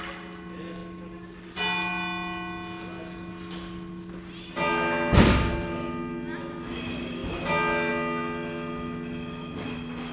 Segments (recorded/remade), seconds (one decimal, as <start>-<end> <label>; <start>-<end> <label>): 0.0-10.1 recorded